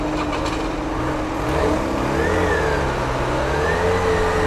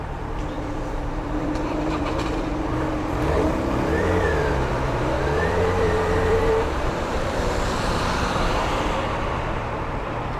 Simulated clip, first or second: second